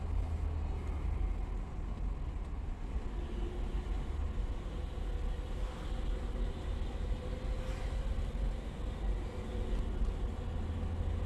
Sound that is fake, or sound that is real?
real